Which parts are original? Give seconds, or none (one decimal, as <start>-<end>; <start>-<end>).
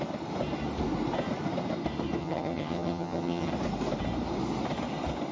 0.0-2.2; 3.5-5.3